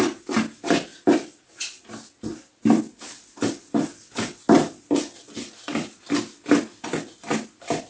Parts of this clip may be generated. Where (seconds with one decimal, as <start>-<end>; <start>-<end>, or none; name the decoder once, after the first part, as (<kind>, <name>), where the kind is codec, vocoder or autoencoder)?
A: none